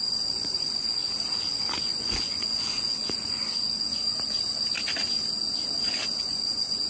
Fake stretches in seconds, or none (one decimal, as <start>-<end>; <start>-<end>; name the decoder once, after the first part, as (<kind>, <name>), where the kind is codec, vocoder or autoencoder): 0.0-1.0 (vocoder, Vocos); 1.8-4.0; 6.2-6.9